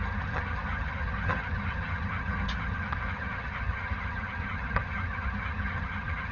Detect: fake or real fake